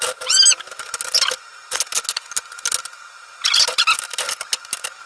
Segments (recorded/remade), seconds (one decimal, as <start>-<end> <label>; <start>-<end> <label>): 0.0-5.1 recorded